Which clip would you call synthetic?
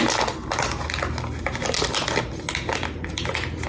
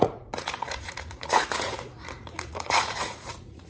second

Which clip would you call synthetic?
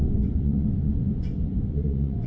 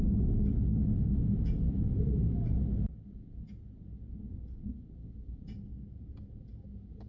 first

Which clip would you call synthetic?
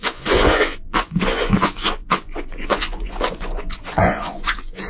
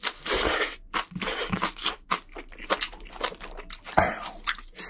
first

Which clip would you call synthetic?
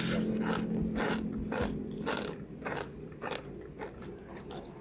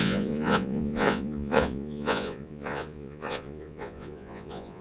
second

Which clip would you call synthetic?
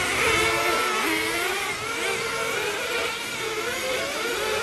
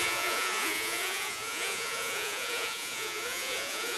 second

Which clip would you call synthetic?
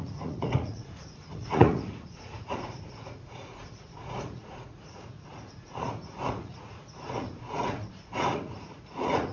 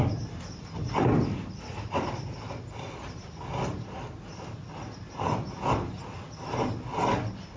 first